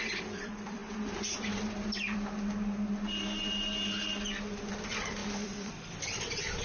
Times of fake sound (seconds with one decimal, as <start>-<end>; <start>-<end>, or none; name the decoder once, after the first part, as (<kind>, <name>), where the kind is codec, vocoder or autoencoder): 0.0-0.8 (vocoder, BigVGAN v2); 4.7-6.6